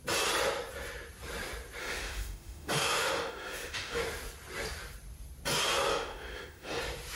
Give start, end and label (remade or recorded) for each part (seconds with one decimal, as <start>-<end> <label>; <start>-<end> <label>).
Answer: 0.0-1.8 recorded; 1.8-4.0 remade; 4.0-5.9 recorded; 5.9-6.8 remade; 6.8-7.2 recorded